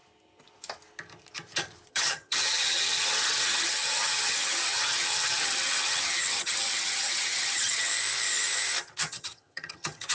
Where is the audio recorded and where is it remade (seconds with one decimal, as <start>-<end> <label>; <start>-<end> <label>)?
0.0-1.9 recorded; 1.9-7.9 remade; 7.9-9.0 recorded; 9.0-10.1 remade